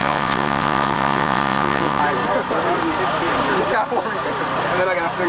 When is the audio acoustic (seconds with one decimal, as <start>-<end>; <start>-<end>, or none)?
2.0-5.3